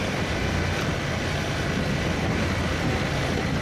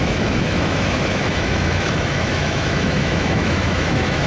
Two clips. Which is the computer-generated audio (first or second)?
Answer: second